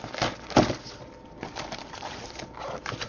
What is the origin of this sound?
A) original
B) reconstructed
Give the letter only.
A